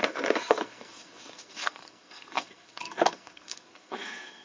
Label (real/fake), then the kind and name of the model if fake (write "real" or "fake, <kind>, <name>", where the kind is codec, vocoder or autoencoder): fake, codec, SNAC